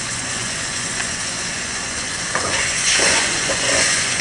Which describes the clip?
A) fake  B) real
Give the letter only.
A